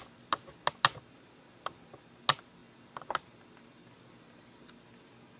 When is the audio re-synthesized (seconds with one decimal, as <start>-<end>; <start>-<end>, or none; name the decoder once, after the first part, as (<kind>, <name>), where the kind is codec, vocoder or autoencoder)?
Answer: none